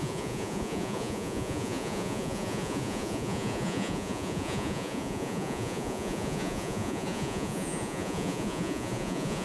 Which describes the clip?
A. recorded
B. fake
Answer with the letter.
B